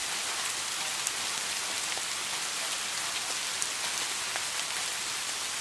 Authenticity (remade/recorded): recorded